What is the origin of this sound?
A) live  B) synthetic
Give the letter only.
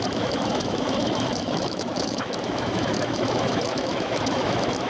B